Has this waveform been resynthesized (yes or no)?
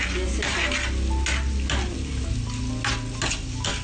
no